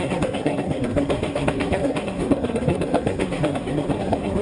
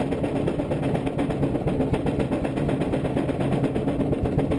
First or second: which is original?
second